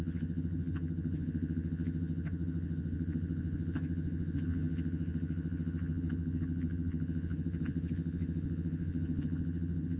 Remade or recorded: remade